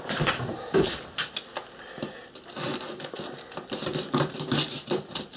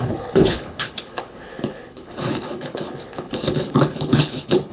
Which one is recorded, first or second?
first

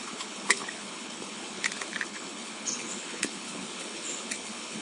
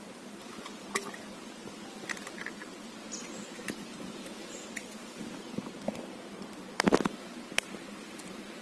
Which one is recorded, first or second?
second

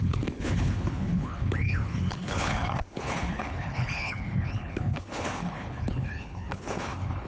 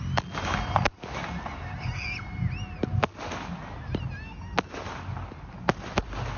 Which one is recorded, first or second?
second